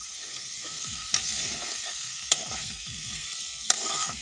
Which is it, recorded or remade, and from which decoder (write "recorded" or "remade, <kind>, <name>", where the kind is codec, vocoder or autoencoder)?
remade, codec, SNAC